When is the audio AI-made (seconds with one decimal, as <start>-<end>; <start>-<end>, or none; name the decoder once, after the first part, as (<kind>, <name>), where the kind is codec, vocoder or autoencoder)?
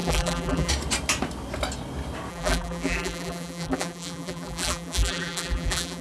0.0-0.7 (vocoder, BigVGAN v2); 2.3-6.0